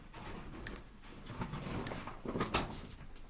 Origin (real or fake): real